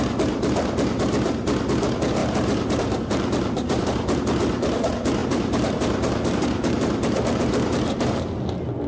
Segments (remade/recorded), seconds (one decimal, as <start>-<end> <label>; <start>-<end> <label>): 0.0-2.2 recorded; 2.2-4.2 remade; 4.2-5.2 recorded; 5.2-7.4 remade; 7.4-8.9 recorded